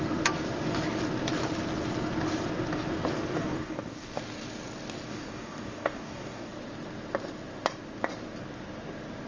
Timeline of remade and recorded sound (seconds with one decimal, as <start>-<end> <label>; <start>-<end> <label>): 0.0-3.1 recorded; 3.1-4.2 remade; 4.2-5.1 recorded; 5.1-6.5 remade; 6.5-9.3 recorded